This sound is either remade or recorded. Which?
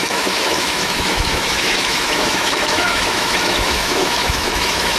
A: remade